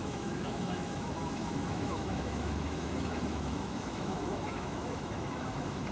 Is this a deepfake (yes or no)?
yes